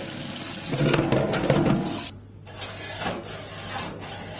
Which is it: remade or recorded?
recorded